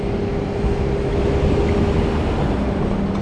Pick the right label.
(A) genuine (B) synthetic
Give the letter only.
A